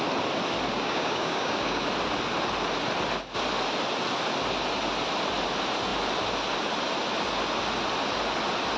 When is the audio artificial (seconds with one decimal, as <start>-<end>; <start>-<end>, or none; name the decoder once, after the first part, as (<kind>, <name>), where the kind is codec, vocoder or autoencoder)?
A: 0.7-1.9 (codec, DAC)